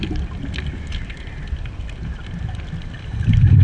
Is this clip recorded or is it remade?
recorded